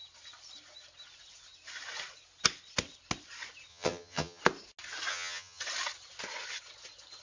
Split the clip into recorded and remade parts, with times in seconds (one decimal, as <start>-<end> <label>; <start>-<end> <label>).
0.0-3.7 recorded; 3.7-4.4 remade; 4.4-5.1 recorded; 5.1-5.6 remade; 5.6-7.2 recorded